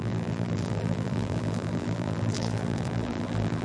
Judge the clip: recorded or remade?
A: remade